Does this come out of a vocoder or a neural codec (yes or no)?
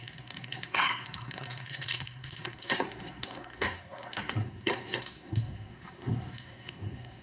yes